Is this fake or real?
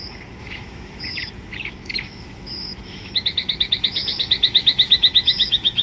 fake